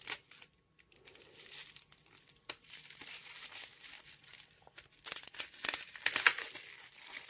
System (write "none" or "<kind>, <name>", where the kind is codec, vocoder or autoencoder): none